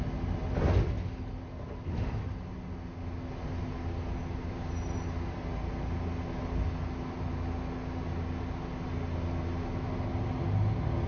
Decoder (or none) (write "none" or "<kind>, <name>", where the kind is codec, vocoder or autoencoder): none